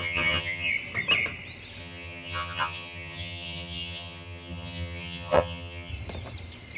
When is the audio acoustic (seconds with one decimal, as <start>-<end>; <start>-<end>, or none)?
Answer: 0.7-1.8; 5.9-6.8